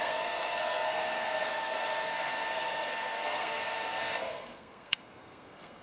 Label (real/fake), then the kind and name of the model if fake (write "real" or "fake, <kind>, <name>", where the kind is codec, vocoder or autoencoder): fake, codec, SNAC